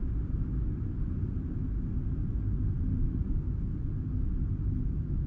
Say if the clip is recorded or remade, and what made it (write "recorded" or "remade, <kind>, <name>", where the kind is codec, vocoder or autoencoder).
recorded